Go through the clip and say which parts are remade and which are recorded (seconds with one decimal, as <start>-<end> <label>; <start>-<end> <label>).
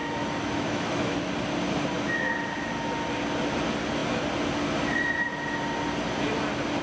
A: 0.0-1.3 remade; 1.3-6.8 recorded